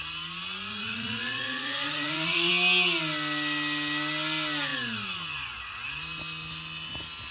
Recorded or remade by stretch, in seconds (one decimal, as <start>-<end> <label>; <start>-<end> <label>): 0.0-0.7 recorded; 0.7-2.5 remade; 2.5-7.3 recorded